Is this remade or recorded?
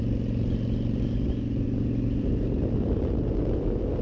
recorded